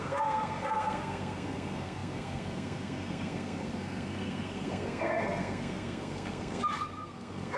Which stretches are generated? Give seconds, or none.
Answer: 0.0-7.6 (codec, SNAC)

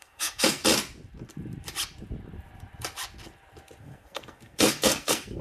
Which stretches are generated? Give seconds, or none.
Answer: 0.0-0.6 (codec, SNAC); 3.8-5.4

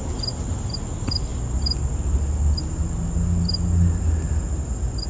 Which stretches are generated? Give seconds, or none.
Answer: none

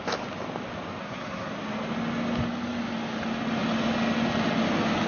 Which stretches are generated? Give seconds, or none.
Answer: 1.0-1.5 (codec, SNAC)

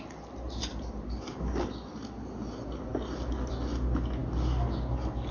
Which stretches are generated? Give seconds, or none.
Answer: none

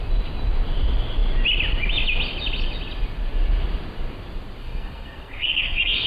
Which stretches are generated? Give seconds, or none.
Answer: 4.6-6.1 (codec, SNAC)